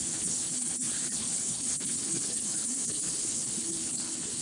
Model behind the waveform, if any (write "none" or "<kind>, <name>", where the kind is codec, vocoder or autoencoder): codec, HILCodec